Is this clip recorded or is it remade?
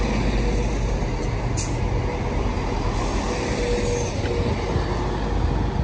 recorded